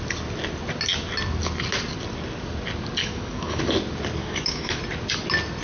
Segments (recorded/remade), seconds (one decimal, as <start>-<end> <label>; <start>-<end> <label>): 0.0-3.0 recorded; 3.0-3.6 remade; 3.6-4.2 recorded; 4.2-4.8 remade; 4.8-5.6 recorded